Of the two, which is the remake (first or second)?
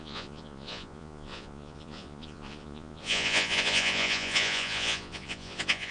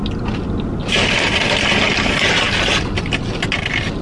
first